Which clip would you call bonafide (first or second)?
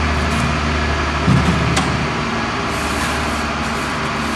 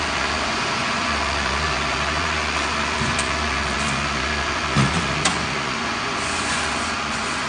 first